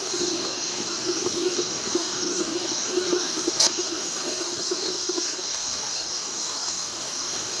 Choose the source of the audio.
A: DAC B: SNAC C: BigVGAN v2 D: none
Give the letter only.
A